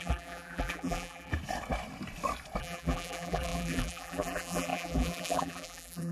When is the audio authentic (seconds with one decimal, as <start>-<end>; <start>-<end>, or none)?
1.3-2.6

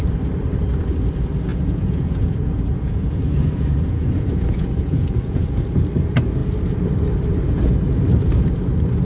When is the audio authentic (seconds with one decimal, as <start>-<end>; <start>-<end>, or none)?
0.0-1.5; 5.6-9.0